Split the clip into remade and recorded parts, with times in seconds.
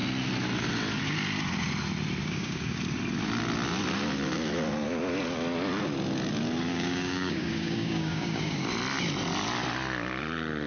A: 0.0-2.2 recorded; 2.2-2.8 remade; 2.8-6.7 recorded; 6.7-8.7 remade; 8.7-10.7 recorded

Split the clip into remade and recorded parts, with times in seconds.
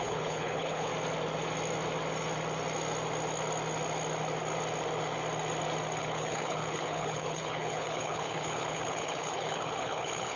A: 0.0-0.9 remade; 0.9-6.0 recorded; 6.0-10.4 remade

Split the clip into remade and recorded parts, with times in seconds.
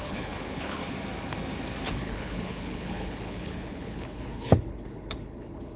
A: 0.0-0.8 remade; 0.8-1.9 recorded; 1.9-5.8 remade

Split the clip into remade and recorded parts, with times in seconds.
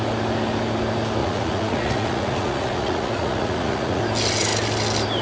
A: 0.0-1.2 recorded; 1.2-4.0 remade; 4.0-5.2 recorded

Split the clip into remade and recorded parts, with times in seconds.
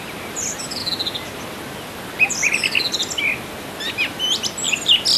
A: 0.0-0.8 remade; 0.8-3.9 recorded; 3.9-5.2 remade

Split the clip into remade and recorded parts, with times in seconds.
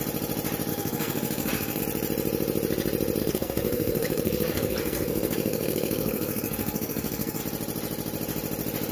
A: 0.0-0.7 recorded; 0.7-1.8 remade; 1.8-3.2 recorded; 3.2-7.4 remade; 7.4-8.9 recorded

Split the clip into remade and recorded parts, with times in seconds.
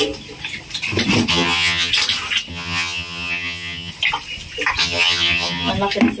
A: 0.0-1.3 recorded; 1.3-1.9 remade; 1.9-2.5 recorded; 2.5-3.9 remade; 3.9-4.8 recorded; 4.8-5.7 remade; 5.7-6.2 recorded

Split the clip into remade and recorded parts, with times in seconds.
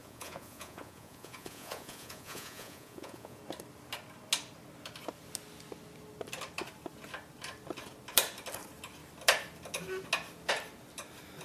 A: 0.0-3.4 remade; 3.4-11.4 recorded